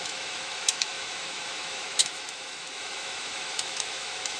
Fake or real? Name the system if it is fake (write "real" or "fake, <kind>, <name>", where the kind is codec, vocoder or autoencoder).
fake, autoencoder, DAC-VAE